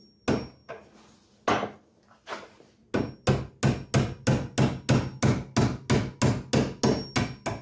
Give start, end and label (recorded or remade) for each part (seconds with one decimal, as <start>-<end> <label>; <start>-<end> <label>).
0.0-7.6 recorded